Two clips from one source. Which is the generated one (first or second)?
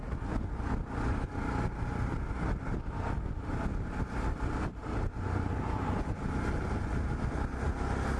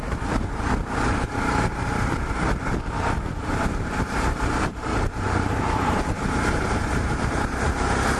second